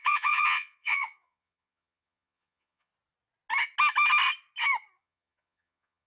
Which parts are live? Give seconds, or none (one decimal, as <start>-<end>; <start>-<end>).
2.9-5.0